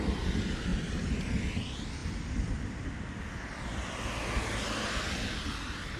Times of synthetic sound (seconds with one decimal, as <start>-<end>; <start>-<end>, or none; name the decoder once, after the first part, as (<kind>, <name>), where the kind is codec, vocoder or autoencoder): none